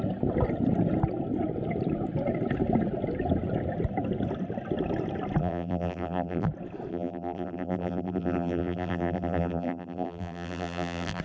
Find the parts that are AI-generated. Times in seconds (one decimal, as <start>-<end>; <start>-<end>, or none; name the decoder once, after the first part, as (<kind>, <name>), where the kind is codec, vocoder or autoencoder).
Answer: 5.4-6.5 (vocoder, BigVGAN v2); 6.9-11.2